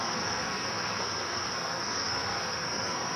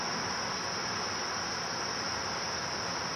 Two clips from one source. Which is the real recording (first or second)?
second